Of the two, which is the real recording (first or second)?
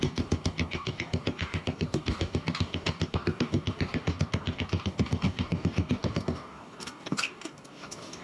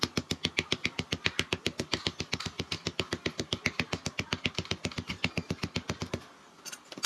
second